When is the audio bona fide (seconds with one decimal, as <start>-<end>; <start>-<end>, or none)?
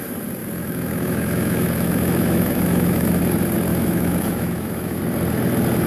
0.0-0.4; 3.2-3.7; 5.0-5.9